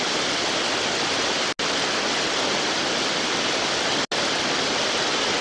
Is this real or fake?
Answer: real